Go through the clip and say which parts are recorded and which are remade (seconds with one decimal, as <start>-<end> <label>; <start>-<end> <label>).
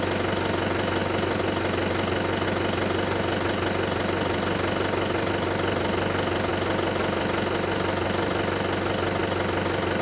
0.0-10.0 recorded